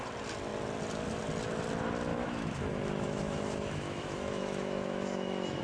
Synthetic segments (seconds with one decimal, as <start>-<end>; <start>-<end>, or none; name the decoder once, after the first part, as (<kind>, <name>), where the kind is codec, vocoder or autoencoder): 2.1-5.6 (autoencoder, DAC-VAE)